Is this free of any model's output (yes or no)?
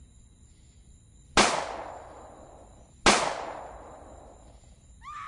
yes